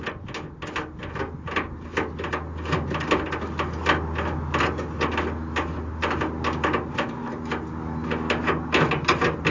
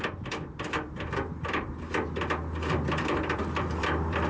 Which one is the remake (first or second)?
second